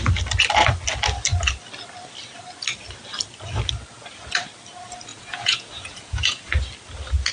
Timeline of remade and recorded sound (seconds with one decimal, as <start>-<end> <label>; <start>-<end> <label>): 0.0-5.1 recorded; 5.1-6.5 remade; 6.5-7.3 recorded